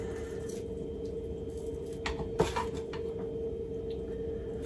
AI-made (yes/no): no